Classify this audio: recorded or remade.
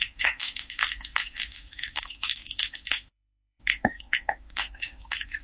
remade